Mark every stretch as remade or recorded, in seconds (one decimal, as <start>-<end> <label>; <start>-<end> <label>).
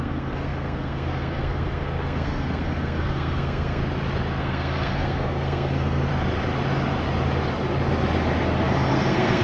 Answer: 0.0-3.8 remade; 3.8-4.4 recorded; 4.4-6.1 remade; 6.1-8.9 recorded; 8.9-9.4 remade